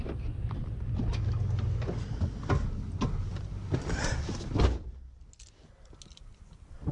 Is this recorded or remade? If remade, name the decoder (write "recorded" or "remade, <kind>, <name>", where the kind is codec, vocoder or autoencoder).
recorded